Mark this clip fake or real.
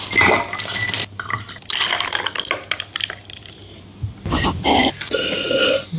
real